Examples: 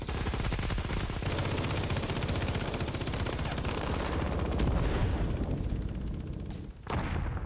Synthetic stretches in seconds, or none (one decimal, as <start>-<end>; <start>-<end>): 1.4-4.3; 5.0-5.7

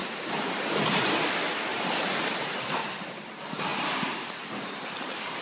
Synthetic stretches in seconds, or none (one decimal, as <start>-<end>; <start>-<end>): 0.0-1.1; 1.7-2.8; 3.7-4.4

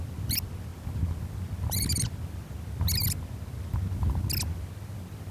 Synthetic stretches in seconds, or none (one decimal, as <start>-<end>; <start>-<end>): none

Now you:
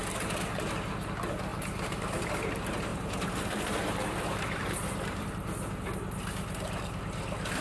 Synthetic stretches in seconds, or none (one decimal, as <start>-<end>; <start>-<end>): 1.5-2.3; 2.9-5.2